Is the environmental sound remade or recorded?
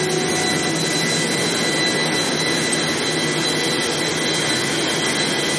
recorded